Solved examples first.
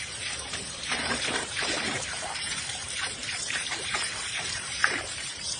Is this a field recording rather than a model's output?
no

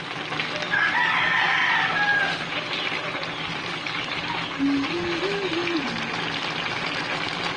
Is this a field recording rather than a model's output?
yes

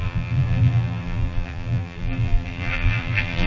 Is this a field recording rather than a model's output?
no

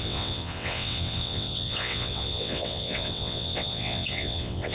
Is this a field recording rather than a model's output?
no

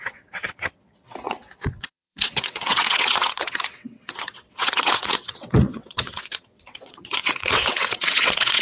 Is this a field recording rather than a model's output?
no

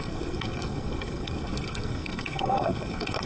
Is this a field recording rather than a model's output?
no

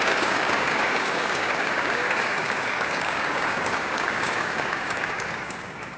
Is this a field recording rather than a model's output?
no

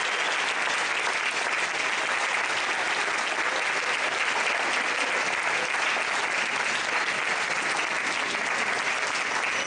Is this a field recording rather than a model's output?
yes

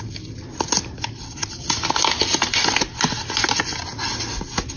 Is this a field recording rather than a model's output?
yes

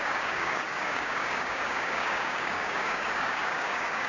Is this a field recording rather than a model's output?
no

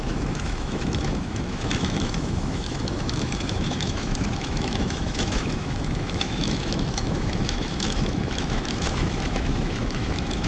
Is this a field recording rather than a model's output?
no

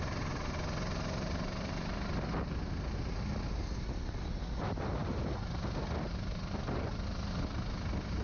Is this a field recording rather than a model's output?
yes